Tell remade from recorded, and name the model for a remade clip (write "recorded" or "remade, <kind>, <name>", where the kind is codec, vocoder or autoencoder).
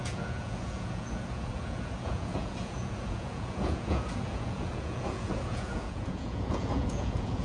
remade, vocoder, Vocos